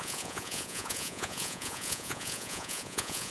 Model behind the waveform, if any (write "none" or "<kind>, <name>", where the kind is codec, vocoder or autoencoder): vocoder, Vocos